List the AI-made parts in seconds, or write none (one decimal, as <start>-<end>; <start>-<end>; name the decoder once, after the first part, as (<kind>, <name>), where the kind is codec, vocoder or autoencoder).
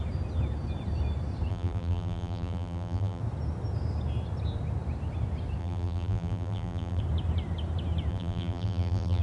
1.5-3.2 (vocoder, BigVGAN v2); 5.6-7.0; 8.1-9.2